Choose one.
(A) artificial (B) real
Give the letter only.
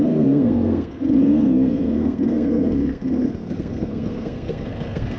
A